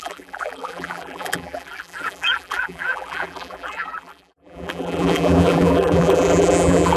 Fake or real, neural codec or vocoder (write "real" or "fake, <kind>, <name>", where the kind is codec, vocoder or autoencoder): fake, vocoder, BigVGAN v2